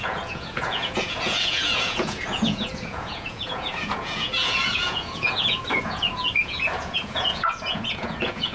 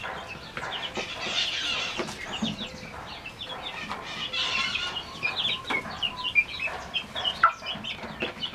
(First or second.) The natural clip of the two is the second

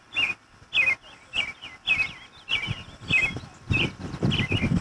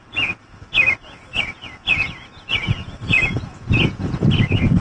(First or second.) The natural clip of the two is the first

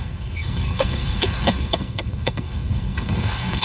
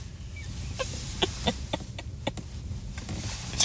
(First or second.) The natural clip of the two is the second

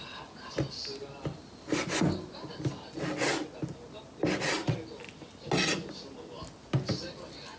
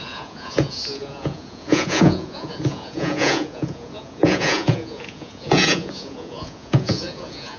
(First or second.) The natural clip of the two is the first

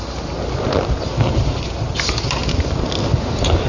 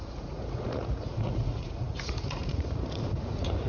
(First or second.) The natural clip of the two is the first